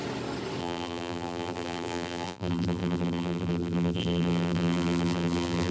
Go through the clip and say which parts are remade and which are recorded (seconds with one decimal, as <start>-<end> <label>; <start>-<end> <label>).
0.0-0.6 recorded; 0.6-5.7 remade